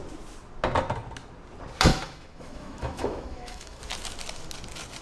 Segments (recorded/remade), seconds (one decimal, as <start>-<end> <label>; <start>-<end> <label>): 0.0-1.9 recorded; 1.9-3.8 remade; 3.8-5.0 recorded